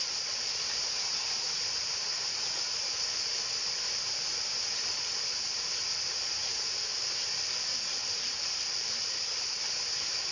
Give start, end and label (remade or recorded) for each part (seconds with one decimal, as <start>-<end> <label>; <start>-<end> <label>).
0.0-4.5 remade; 4.5-6.0 recorded; 6.0-10.3 remade